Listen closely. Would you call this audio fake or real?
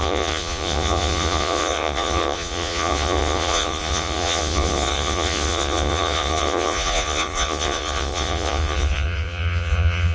fake